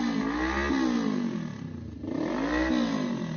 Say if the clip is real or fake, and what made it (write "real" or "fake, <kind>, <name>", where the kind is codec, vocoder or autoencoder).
real